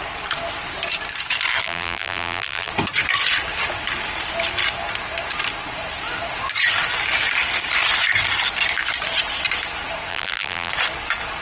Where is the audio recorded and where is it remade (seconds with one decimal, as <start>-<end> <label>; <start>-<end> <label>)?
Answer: 0.0-1.6 recorded; 1.6-2.7 remade; 2.7-10.1 recorded; 10.1-10.7 remade; 10.7-11.4 recorded